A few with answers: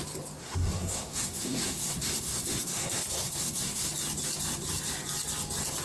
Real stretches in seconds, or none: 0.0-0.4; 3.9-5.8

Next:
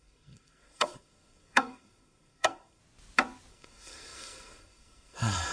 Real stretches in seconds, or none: 2.8-3.5

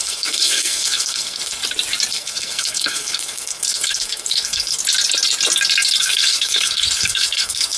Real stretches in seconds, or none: 1.6-2.1; 4.8-6.0

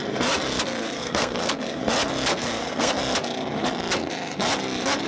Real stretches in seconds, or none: 0.0-0.8; 1.8-2.3; 2.9-5.1

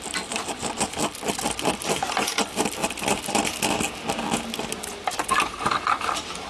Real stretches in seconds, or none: 0.0-6.5

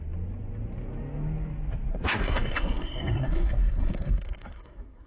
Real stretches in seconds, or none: 0.0-1.9

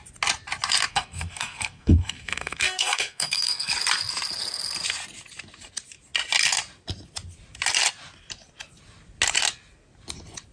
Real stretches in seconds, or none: 0.0-0.9; 3.7-10.5